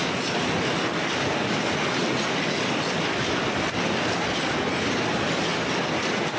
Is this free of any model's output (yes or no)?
yes